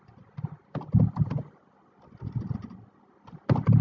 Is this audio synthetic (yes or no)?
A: no